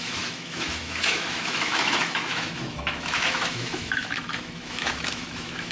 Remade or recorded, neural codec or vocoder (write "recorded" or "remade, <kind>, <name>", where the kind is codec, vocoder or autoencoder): remade, autoencoder, DAC-VAE